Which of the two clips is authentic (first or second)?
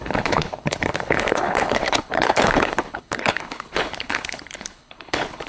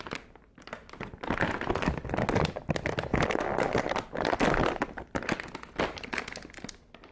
second